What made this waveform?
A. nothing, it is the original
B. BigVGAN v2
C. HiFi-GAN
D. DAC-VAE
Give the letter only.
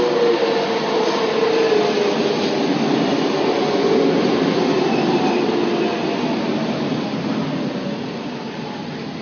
A